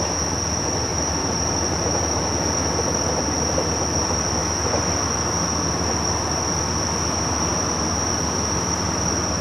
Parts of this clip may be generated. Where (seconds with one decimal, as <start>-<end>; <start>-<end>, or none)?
0.9-2.2